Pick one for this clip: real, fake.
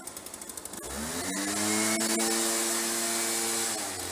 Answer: real